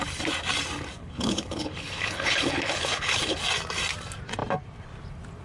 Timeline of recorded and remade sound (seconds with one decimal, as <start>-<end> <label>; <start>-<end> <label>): 0.0-1.0 recorded; 1.0-3.4 remade; 3.4-5.4 recorded